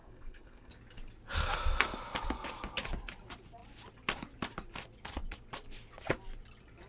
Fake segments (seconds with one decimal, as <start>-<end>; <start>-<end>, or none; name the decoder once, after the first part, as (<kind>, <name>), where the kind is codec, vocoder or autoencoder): 0.0-0.7 (codec, SNAC)